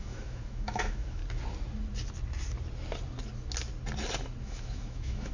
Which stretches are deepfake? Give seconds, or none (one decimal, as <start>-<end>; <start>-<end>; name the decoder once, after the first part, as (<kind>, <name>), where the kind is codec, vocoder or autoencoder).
0.0-1.2 (autoencoder, DAC-VAE); 4.4-5.3